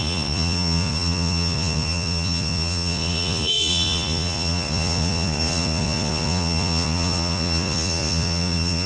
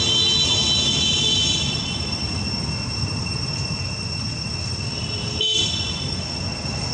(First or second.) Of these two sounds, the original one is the second